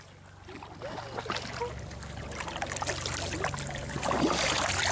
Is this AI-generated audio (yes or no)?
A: no